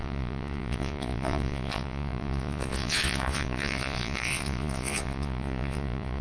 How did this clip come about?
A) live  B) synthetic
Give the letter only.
B